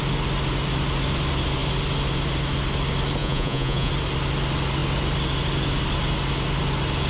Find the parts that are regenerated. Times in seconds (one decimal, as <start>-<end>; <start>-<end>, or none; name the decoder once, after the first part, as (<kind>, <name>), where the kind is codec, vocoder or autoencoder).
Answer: 3.2-3.9 (vocoder, Vocos)